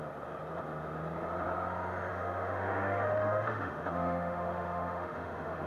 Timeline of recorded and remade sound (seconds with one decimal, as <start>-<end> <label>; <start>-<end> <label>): 0.0-2.1 recorded; 2.1-5.7 remade